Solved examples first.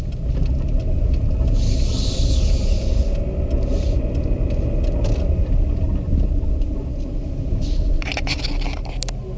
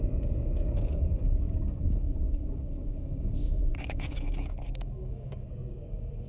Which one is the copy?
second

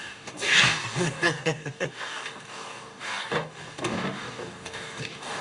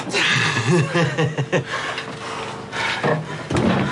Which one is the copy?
first